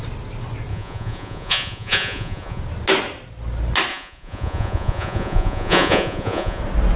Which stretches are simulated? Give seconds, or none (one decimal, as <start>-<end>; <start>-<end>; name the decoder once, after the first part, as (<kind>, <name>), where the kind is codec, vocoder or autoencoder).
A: 0.7-2.6 (vocoder, Vocos); 3.9-6.6